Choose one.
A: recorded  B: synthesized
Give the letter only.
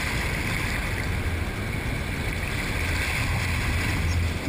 A